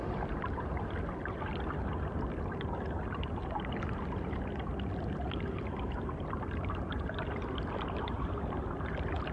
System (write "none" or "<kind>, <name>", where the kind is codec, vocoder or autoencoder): vocoder, BigVGAN v2